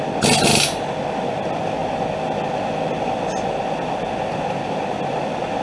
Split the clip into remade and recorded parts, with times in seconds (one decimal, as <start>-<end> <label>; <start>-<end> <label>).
0.0-5.6 recorded

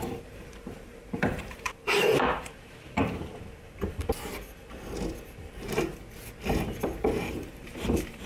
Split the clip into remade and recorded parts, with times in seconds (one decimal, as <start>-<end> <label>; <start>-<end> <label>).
0.0-4.1 remade; 4.1-5.4 recorded; 5.4-6.0 remade; 6.0-7.1 recorded; 7.1-8.3 remade